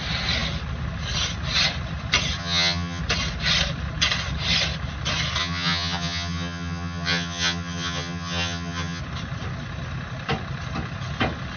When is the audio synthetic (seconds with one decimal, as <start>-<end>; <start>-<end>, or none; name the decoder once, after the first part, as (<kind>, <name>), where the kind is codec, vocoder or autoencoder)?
2.4-3.0 (vocoder, HiFi-GAN); 5.4-9.0